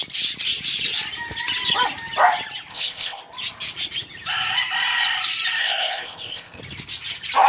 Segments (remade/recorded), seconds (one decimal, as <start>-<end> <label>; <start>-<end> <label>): 0.0-2.7 recorded; 2.7-3.2 remade; 3.2-5.6 recorded; 5.6-6.6 remade; 6.6-7.5 recorded